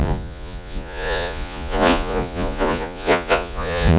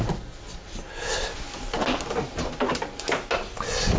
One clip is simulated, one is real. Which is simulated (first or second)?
first